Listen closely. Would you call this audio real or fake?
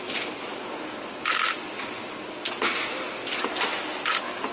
real